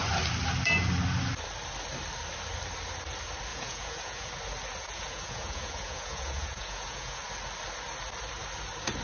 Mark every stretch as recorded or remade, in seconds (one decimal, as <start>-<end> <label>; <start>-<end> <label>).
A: 0.0-3.5 recorded; 3.5-4.3 remade; 4.3-4.8 recorded; 4.8-7.2 remade; 7.2-9.0 recorded